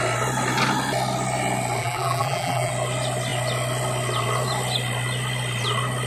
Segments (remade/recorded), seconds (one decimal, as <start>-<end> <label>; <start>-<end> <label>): 0.0-1.8 recorded; 1.8-2.7 remade; 2.7-6.1 recorded